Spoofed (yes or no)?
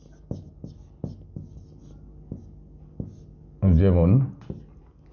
no